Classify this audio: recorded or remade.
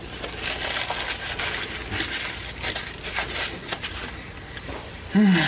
recorded